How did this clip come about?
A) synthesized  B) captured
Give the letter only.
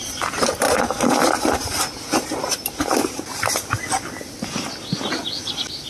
B